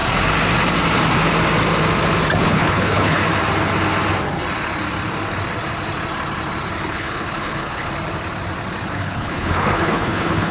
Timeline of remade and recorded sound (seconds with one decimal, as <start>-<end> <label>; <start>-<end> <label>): 0.0-2.4 recorded; 2.4-3.2 remade; 3.2-6.9 recorded; 6.9-7.9 remade; 7.9-8.9 recorded; 8.9-10.5 remade